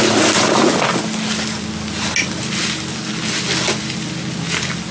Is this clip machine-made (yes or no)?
no